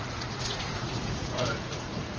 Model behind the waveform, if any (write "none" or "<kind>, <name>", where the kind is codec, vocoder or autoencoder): vocoder, Vocos